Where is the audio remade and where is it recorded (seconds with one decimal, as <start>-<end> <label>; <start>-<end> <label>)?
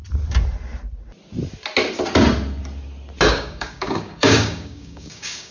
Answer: 0.0-3.3 recorded; 3.3-5.5 remade